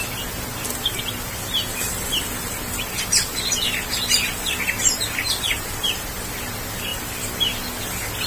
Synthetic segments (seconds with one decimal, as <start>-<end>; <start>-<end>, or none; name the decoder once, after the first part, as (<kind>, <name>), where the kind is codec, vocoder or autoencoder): none